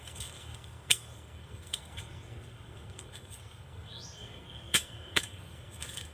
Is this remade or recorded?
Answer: remade